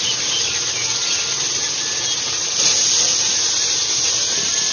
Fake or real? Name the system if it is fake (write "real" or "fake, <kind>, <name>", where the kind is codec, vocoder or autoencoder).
real